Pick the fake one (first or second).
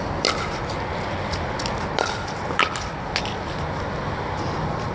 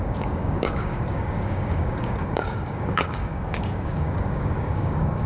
second